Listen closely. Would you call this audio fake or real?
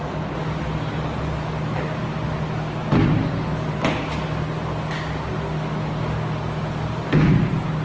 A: real